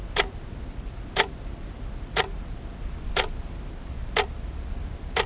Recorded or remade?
recorded